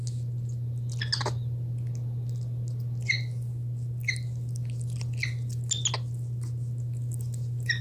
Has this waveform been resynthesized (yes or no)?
no